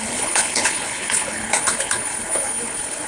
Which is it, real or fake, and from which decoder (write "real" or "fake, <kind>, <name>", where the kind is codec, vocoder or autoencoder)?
fake, codec, HILCodec